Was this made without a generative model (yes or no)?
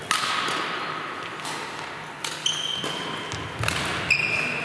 yes